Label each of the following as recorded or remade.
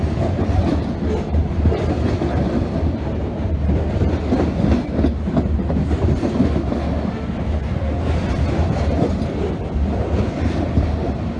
recorded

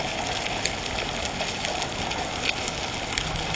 recorded